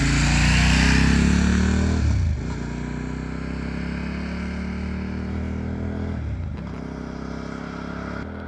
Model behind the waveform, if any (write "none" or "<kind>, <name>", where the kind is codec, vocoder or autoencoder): none